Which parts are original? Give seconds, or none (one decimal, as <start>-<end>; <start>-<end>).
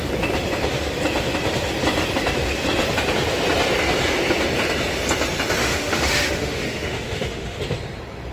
0.0-5.6; 7.6-8.3